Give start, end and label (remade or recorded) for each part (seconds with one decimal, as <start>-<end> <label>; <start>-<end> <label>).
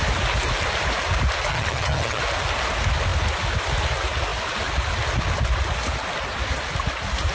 0.0-1.5 recorded; 1.5-2.2 remade; 2.2-7.3 recorded